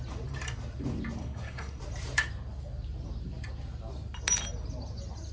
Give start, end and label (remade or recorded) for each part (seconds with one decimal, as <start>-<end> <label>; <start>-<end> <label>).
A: 0.0-1.2 recorded; 1.2-1.8 remade; 1.8-5.3 recorded